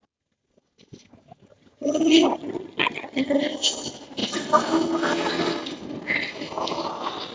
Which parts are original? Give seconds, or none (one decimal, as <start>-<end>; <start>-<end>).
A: 0.0-1.5; 3.4-7.3